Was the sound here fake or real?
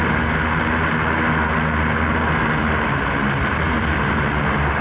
real